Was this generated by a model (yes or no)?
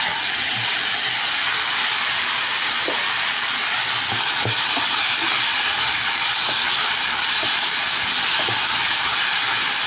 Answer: no